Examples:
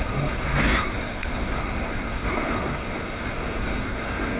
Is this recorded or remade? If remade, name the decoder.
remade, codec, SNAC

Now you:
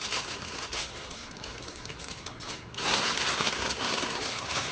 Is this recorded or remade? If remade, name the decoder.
remade, codec, SNAC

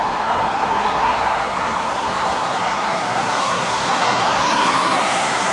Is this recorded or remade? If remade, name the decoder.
remade, codec, SNAC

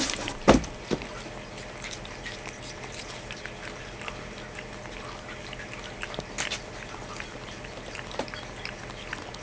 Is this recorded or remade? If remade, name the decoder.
recorded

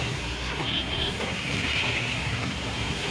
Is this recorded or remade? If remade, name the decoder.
remade, codec, SNAC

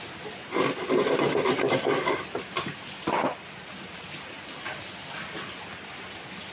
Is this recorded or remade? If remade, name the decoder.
recorded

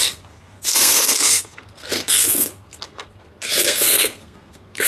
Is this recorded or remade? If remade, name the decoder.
remade, codec, SNAC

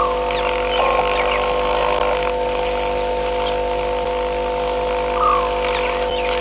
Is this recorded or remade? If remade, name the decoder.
recorded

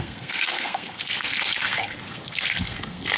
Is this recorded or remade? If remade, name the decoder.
remade, codec, SNAC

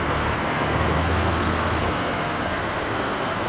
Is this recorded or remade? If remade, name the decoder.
remade, codec, SNAC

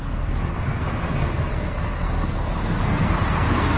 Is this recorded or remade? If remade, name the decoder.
remade, codec, SNAC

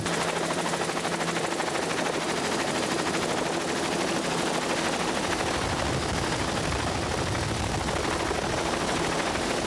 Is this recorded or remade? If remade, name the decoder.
recorded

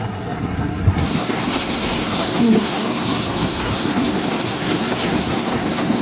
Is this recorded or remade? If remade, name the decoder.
remade, codec, SNAC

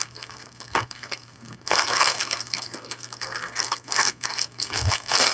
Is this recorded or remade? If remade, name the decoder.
remade, codec, SNAC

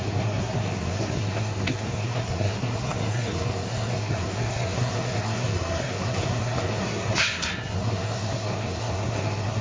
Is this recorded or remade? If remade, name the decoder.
remade, codec, SNAC